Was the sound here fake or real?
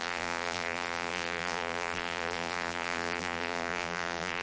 fake